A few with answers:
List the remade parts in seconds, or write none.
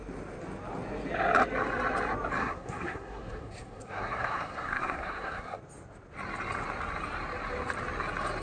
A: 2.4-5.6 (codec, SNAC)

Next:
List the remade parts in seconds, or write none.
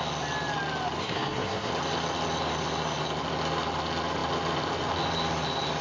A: 1.0-1.7 (codec, SNAC)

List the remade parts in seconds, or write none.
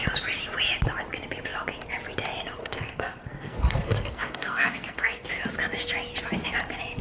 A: 2.6-5.3 (codec, SNAC)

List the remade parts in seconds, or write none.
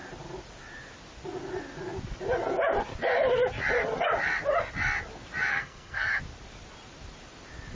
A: 5.5-6.2 (codec, SNAC)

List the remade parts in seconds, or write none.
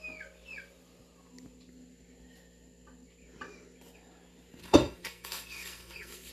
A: 4.6-6.3 (codec, SNAC)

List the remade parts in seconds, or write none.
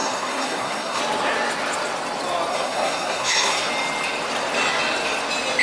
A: 0.0-1.0 (codec, SNAC); 2.5-3.7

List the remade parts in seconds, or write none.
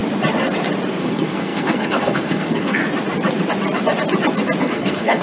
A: 1.0-2.8 (codec, SNAC); 4.6-5.2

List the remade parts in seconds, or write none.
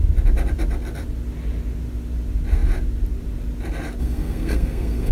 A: 4.0-5.1 (codec, SNAC)